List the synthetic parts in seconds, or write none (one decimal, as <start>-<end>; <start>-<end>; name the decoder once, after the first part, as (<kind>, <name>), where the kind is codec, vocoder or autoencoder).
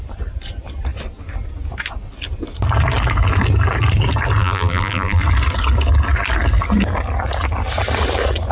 4.4-5.2 (vocoder, BigVGAN v2)